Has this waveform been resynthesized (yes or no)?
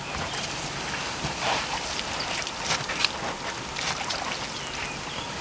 no